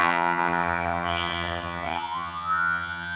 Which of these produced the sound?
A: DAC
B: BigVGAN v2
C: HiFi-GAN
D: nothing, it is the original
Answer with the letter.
C